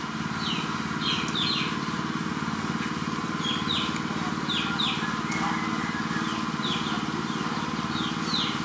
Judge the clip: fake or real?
real